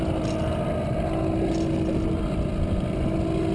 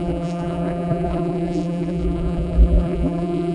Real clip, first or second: first